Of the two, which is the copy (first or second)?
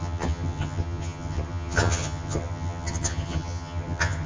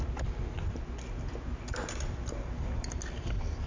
first